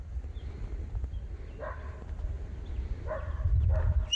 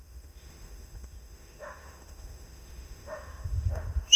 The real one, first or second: first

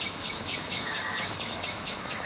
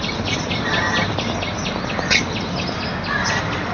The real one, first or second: second